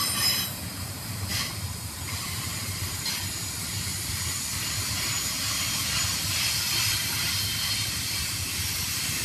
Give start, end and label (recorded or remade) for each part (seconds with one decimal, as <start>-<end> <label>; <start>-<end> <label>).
0.0-0.5 recorded; 0.5-3.9 remade; 3.9-6.5 recorded; 6.5-9.2 remade

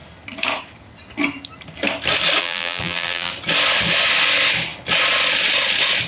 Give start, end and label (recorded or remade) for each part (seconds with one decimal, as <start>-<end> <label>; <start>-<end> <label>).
0.0-2.4 recorded; 2.4-3.3 remade; 3.3-6.1 recorded

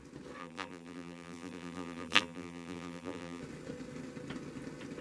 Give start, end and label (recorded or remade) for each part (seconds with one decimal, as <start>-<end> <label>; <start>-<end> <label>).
0.0-0.4 recorded; 0.4-3.4 remade; 3.4-5.0 recorded